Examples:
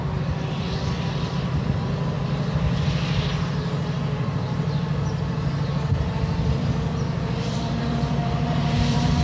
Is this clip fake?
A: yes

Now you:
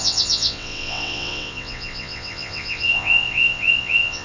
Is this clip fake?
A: yes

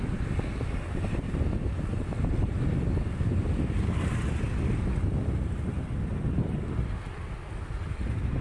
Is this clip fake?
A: no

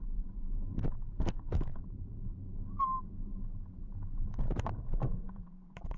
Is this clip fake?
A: yes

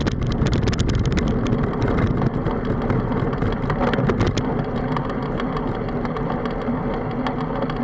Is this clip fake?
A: no